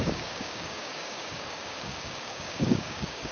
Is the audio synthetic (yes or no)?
yes